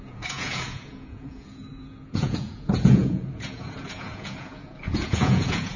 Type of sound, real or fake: fake